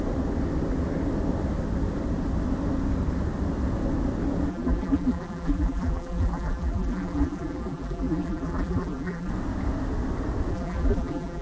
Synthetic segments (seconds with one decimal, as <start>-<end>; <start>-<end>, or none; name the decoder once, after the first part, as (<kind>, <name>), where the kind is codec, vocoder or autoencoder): 4.5-9.3 (vocoder, BigVGAN v2); 10.5-11.4

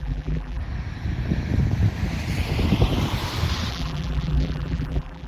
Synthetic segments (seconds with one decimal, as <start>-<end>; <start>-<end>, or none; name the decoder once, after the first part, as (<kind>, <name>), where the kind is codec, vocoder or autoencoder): 0.0-0.6 (vocoder, BigVGAN v2); 3.7-5.3